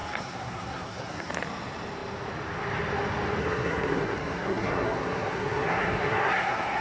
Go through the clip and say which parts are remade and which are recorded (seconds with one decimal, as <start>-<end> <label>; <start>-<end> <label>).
0.0-1.3 remade; 1.3-3.4 recorded; 3.4-6.8 remade

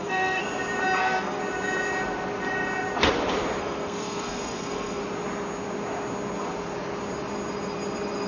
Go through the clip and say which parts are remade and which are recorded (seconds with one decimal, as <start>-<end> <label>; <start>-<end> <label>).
0.0-0.4 remade; 0.4-1.0 recorded; 1.0-1.4 remade; 1.4-3.6 recorded; 3.6-5.0 remade; 5.0-8.3 recorded